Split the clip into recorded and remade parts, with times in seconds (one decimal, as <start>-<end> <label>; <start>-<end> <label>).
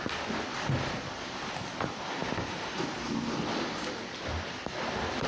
0.0-5.3 recorded